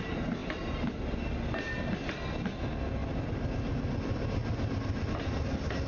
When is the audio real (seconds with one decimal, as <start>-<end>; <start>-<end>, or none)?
0.0-5.9